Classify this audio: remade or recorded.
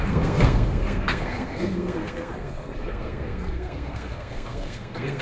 remade